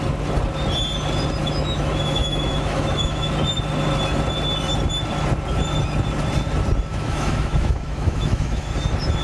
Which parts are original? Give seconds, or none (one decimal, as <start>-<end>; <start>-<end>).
0.0-1.4; 3.3-6.9; 8.7-9.2